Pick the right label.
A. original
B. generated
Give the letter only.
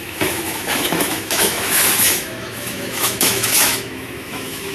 B